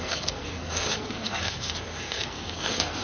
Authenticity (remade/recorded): remade